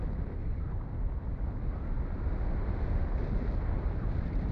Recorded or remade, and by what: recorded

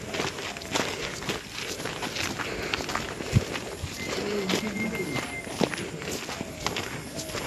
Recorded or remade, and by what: recorded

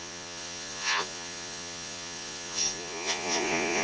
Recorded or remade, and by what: remade, vocoder, Vocos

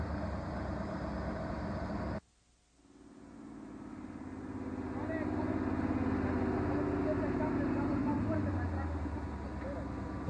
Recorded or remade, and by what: recorded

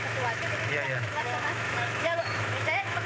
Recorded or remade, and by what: remade, autoencoder, DAC-VAE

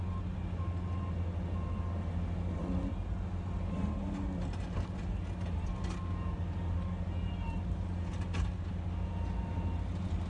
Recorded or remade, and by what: recorded